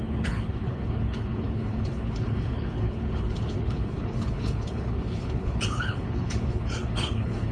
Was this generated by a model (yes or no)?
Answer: yes